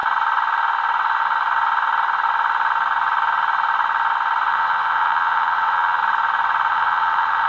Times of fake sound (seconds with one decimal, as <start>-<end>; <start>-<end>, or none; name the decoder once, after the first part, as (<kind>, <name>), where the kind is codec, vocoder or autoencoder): 4.5-6.0 (vocoder, WaveNeXt); 6.7-7.5